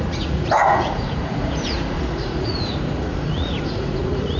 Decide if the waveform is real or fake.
fake